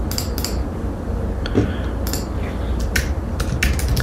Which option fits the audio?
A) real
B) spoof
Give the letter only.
A